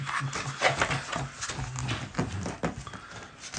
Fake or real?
real